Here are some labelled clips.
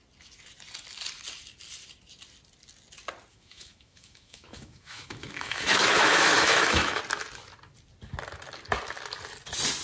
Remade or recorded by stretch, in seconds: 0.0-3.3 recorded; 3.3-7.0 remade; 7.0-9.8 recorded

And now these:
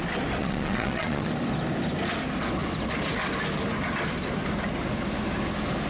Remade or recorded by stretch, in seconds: 0.0-0.4 recorded; 0.4-1.3 remade; 1.3-5.9 recorded

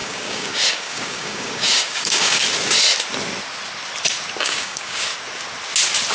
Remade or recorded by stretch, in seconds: 0.0-2.4 remade; 2.4-4.4 recorded; 4.4-5.1 remade; 5.1-6.1 recorded

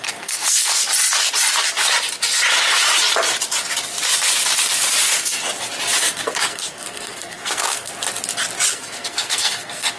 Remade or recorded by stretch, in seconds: 0.0-0.8 remade; 0.8-5.0 recorded; 5.0-5.4 remade; 5.4-6.0 recorded; 6.0-7.9 remade; 7.9-8.7 recorded; 8.7-10.0 remade

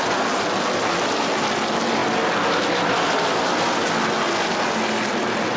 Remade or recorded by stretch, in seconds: 0.0-5.6 recorded

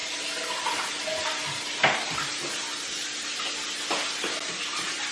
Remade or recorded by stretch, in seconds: 0.0-5.1 recorded